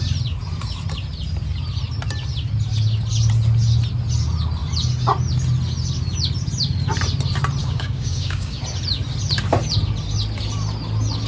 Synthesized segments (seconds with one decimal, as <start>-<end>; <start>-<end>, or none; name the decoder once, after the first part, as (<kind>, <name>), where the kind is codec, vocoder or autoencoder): 7.6-8.6 (codec, DAC)